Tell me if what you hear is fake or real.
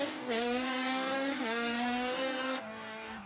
fake